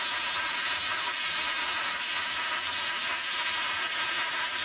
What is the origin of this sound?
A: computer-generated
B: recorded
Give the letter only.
B